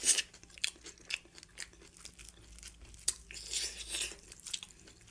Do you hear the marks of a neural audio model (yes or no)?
no